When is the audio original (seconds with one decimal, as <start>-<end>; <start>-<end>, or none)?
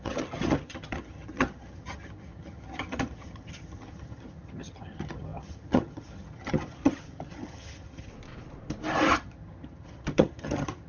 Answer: 8.1-9.1